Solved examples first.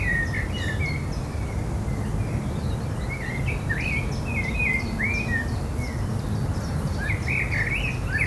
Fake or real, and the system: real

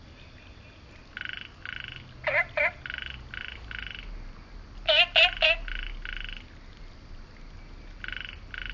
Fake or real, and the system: real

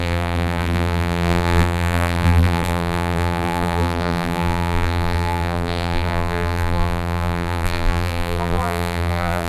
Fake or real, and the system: fake, vocoder, BigVGAN v2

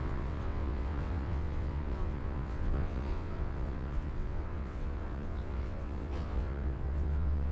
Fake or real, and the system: fake, vocoder, WaveNeXt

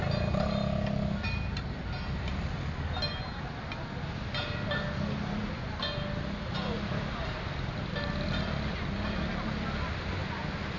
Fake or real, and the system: real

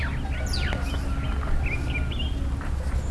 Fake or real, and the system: real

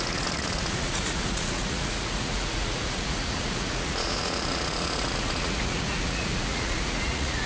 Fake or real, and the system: fake, vocoder, Vocos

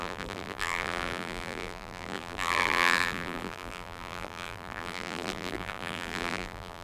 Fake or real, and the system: fake, vocoder, BigVGAN v2